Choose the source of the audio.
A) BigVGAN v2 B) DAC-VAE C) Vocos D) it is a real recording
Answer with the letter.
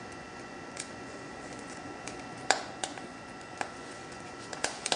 C